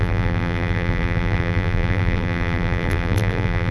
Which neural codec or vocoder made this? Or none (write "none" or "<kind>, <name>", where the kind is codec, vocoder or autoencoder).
vocoder, BigVGAN v2